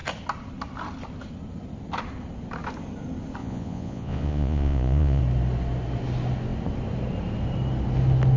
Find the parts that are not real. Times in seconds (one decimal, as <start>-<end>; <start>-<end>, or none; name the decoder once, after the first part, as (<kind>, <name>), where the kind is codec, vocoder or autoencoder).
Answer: 3.4-5.2 (vocoder, Vocos)